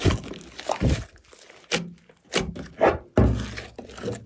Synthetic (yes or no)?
no